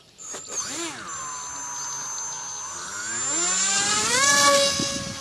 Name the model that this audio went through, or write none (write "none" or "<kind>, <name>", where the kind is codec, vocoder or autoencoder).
none